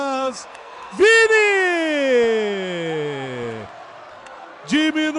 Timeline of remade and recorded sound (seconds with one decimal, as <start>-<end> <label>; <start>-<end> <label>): 0.0-1.0 remade; 1.0-4.1 recorded; 4.1-4.5 remade; 4.5-5.2 recorded